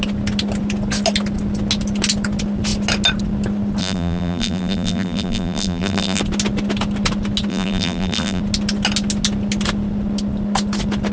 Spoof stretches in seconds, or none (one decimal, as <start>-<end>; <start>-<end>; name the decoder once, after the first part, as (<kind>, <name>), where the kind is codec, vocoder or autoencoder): 3.8-6.2 (vocoder, BigVGAN v2); 7.5-8.4